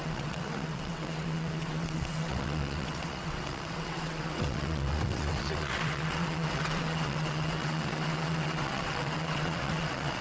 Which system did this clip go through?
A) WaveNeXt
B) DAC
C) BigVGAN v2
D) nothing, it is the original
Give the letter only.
A